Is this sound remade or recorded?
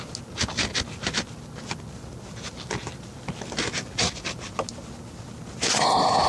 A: recorded